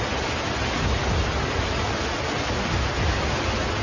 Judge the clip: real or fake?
real